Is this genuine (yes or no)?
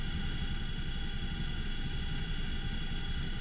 yes